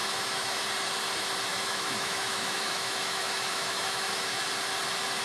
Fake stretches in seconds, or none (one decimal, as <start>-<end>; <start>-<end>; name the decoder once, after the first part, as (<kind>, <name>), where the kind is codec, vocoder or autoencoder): 0.0-0.6 (autoencoder, DAC-VAE); 1.5-4.4